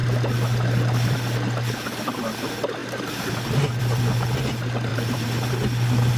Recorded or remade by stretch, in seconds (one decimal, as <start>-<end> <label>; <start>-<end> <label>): 0.0-2.8 recorded; 2.8-3.8 remade; 3.8-4.9 recorded; 4.9-5.5 remade; 5.5-6.2 recorded